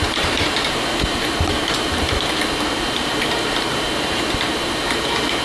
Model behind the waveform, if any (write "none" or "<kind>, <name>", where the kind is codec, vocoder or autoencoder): vocoder, BigVGAN v2